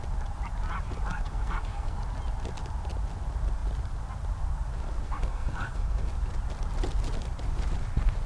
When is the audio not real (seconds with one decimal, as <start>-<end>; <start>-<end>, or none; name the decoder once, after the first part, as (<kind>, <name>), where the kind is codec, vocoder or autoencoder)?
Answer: 1.1-2.0 (codec, SNAC); 4.9-6.1